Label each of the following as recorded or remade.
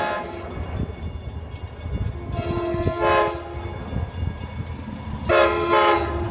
recorded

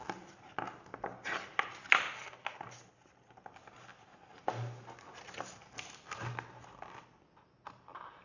recorded